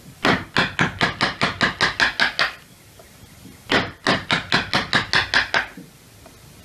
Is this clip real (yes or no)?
yes